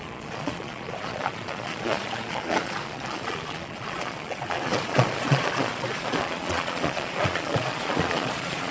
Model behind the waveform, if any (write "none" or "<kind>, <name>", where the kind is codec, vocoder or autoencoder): vocoder, Vocos